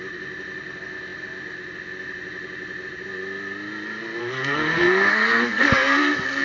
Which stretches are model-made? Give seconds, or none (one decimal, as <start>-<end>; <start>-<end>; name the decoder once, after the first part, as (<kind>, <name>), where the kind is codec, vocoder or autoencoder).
4.2-6.4 (codec, SNAC)